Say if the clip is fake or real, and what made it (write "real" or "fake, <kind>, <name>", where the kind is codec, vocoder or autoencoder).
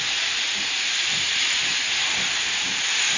real